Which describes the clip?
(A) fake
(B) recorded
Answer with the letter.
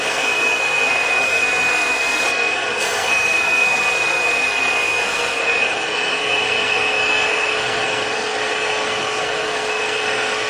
A